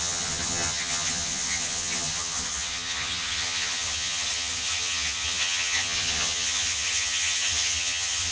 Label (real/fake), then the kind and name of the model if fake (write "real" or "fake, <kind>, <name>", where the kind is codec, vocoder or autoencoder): fake, vocoder, HiFi-GAN